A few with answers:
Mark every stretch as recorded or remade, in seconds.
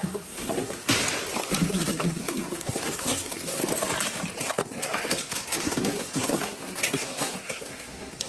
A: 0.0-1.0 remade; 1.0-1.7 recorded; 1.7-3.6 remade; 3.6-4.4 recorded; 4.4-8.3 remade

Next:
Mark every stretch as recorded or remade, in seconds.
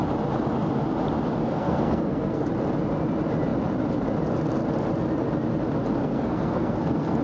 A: 0.0-1.4 recorded; 1.4-2.5 remade; 2.5-6.0 recorded; 6.0-7.2 remade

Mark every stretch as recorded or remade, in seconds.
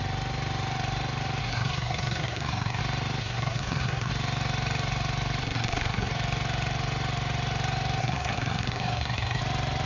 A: 0.0-1.4 recorded; 1.4-2.8 remade; 2.8-3.2 recorded; 3.2-4.1 remade; 4.1-5.4 recorded; 5.4-6.1 remade; 6.1-8.0 recorded; 8.0-9.4 remade; 9.4-9.9 recorded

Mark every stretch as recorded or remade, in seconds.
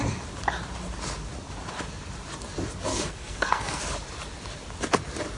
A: 0.0-2.9 recorded; 2.9-3.8 remade; 3.8-5.4 recorded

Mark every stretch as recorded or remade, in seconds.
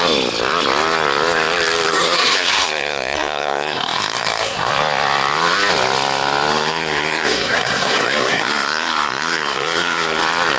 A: 0.0-1.9 recorded; 1.9-4.7 remade; 4.7-6.5 recorded; 6.5-10.2 remade; 10.2-10.6 recorded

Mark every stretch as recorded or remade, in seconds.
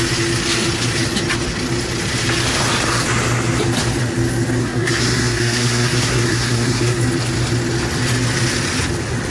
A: 0.0-4.6 recorded; 4.6-7.0 remade; 7.0-9.3 recorded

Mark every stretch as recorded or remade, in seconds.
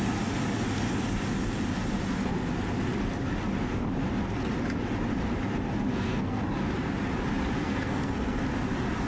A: 0.0-5.9 recorded; 5.9-6.4 remade; 6.4-7.6 recorded; 7.6-8.4 remade; 8.4-9.1 recorded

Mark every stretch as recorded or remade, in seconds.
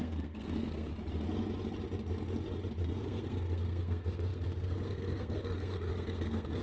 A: 0.0-0.9 remade; 0.9-2.8 recorded; 2.8-6.6 remade